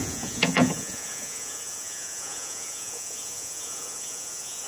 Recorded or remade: remade